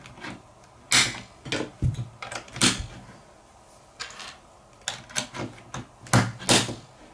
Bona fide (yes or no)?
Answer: yes